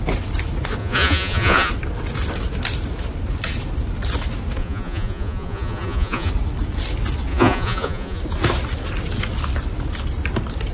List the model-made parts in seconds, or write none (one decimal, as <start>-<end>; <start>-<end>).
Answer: 0.8-1.7; 4.6-6.3; 7.3-8.2